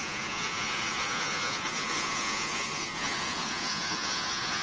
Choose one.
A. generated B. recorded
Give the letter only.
A